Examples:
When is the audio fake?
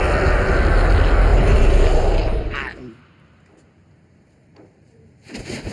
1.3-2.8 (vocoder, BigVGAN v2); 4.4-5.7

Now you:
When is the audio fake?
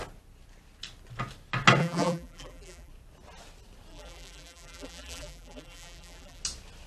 1.8-2.9 (vocoder, BigVGAN v2); 3.9-6.4